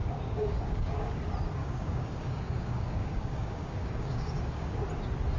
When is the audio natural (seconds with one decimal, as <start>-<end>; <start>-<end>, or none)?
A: 1.2-1.6; 4.8-5.4